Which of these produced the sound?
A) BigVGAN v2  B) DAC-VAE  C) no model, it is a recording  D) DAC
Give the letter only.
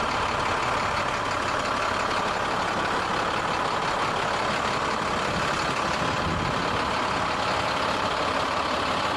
C